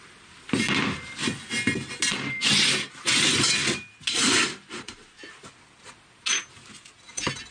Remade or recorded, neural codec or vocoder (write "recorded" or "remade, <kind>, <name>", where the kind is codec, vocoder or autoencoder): recorded